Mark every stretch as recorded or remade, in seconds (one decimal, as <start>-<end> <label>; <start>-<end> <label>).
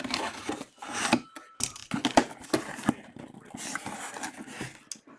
0.0-5.2 recorded